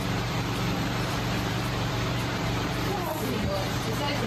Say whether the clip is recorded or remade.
remade